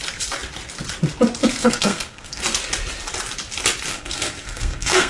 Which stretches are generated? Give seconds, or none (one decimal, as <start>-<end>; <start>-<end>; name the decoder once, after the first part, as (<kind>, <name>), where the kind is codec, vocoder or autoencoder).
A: 1.6-2.4 (codec, SNAC); 3.9-5.1